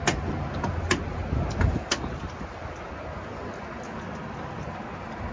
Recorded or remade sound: recorded